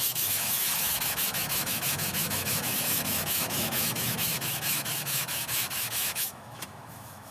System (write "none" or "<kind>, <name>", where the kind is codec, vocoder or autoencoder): autoencoder, DAC-VAE